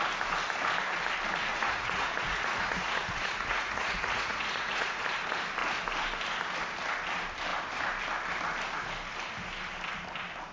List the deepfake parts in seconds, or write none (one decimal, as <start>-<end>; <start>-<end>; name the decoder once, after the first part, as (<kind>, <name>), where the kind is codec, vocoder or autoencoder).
1.5-5.0 (vocoder, Vocos)